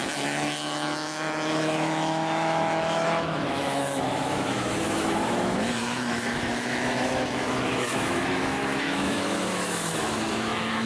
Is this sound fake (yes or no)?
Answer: yes